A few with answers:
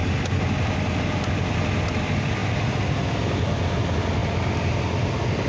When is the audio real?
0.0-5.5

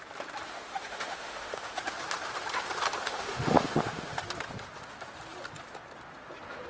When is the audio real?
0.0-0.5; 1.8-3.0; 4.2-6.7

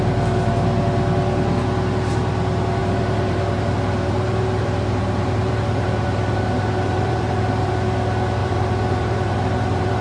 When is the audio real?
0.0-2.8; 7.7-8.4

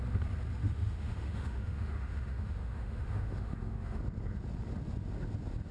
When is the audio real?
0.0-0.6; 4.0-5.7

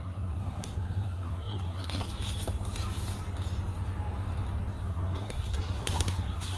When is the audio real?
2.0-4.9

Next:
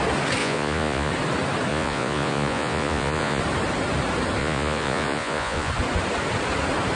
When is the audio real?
0.0-0.4; 1.1-1.7; 3.4-4.4; 5.7-6.9

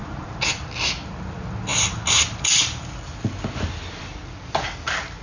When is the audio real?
0.6-5.2

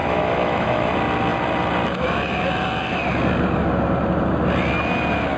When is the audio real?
0.9-5.4